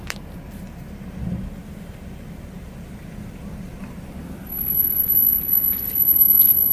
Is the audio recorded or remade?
recorded